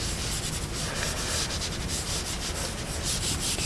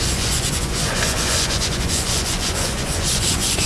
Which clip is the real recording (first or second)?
first